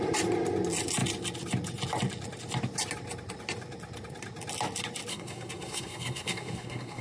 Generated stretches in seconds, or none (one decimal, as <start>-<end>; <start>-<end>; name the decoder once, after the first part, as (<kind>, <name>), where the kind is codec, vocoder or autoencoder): 5.1-7.0 (codec, SNAC)